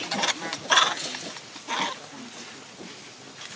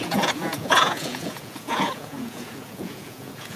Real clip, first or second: first